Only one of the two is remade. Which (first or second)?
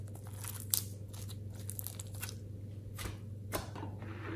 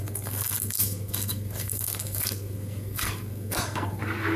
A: second